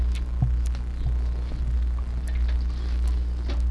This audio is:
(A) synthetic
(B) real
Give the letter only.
B